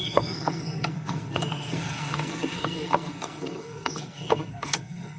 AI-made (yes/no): yes